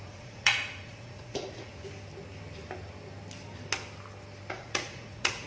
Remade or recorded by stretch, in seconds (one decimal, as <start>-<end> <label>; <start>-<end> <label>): 0.0-1.7 remade; 1.7-4.5 recorded; 4.5-5.5 remade